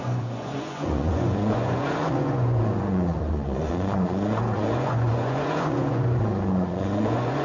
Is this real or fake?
fake